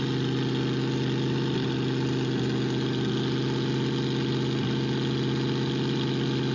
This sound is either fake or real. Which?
real